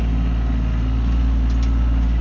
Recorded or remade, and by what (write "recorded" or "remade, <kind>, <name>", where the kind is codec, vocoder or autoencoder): recorded